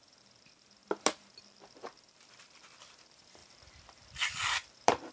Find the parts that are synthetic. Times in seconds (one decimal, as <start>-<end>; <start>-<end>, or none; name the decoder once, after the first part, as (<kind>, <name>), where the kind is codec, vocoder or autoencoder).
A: 0.0-0.8 (vocoder, BigVGAN v2); 1.4-3.4; 4.5-5.1